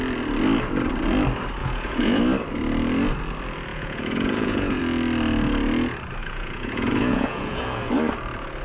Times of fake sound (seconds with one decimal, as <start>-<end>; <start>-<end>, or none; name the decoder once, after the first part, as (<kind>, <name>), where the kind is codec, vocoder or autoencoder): 1.6-2.2 (vocoder, Vocos); 3.7-4.8; 6.2-7.9